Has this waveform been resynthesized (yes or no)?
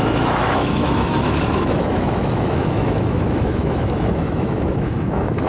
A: yes